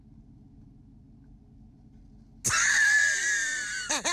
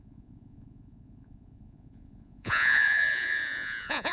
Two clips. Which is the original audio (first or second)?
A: first